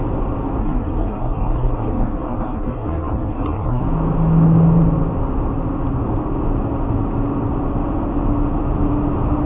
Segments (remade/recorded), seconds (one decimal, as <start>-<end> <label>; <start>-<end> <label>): 0.0-0.6 recorded; 0.6-3.8 remade; 3.8-9.5 recorded